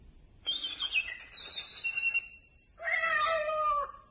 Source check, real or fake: fake